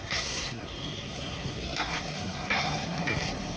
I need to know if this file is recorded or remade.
remade